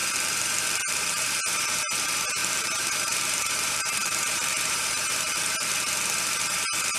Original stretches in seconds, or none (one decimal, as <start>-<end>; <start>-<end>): none